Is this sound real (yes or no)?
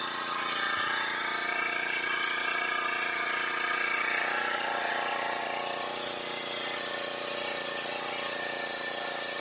yes